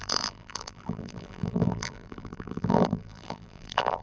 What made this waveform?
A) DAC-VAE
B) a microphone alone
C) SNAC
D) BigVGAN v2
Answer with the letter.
D